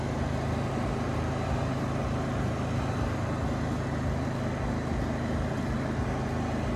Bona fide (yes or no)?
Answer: yes